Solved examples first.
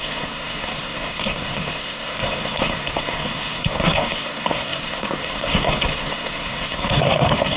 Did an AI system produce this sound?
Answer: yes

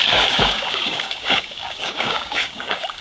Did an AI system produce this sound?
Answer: yes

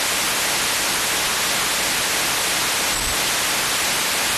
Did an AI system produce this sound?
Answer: no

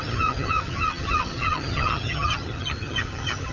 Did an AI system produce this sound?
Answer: yes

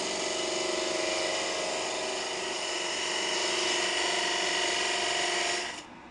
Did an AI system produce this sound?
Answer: no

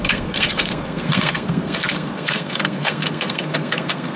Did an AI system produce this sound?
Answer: yes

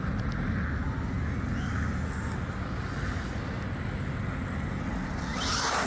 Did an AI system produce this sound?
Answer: no